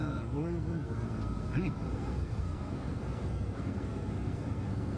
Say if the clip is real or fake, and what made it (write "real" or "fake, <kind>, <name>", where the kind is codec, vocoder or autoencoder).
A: fake, codec, SNAC